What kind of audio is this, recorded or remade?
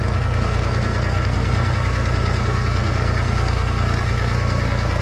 remade